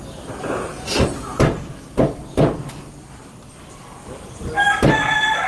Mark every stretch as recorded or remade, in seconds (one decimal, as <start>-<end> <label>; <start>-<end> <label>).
0.0-5.5 recorded